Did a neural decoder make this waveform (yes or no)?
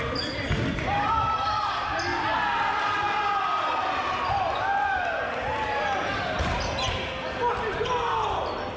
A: no